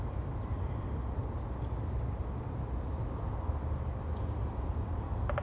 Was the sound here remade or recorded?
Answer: recorded